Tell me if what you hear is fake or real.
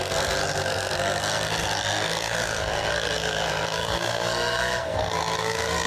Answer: fake